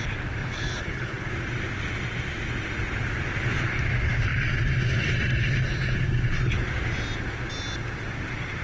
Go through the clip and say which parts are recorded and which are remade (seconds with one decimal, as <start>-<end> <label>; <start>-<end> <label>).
0.0-0.4 recorded; 0.4-1.3 remade; 1.3-8.6 recorded